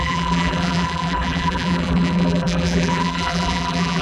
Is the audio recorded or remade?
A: remade